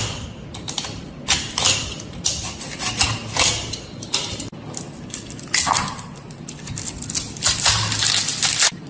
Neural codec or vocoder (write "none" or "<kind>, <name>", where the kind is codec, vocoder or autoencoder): none